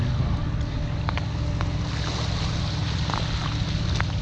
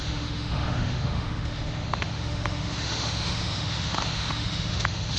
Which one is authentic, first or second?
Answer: first